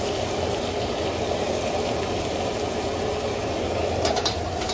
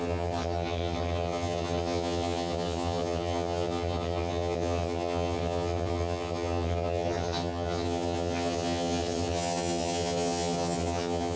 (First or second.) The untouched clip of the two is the first